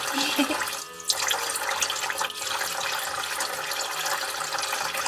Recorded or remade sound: recorded